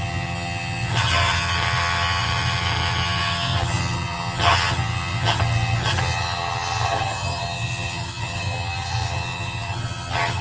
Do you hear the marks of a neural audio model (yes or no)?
yes